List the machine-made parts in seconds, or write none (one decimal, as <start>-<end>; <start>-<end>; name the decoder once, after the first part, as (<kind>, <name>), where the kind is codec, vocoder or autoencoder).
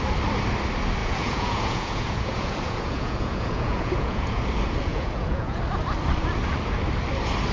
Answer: 1.0-4.4 (vocoder, Vocos); 4.9-5.6